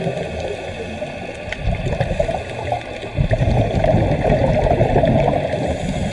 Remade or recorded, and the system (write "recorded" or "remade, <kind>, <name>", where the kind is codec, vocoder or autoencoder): recorded